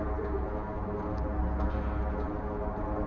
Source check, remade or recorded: recorded